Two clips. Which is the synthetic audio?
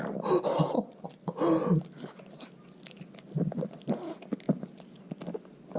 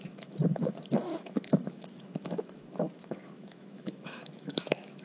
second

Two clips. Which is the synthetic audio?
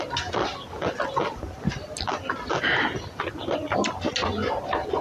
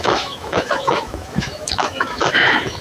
second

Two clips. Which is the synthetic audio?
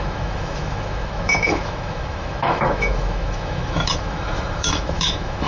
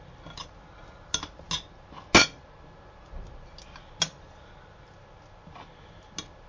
first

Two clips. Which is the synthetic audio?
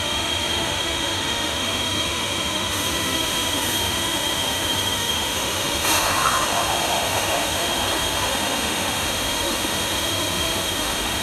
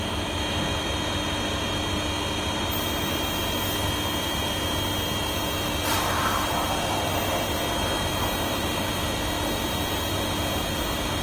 first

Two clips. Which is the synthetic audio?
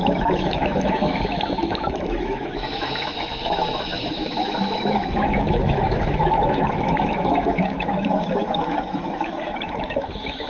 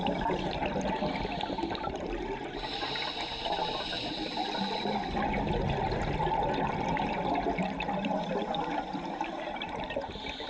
first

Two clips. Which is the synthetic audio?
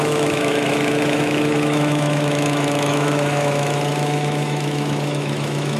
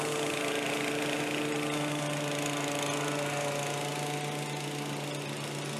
first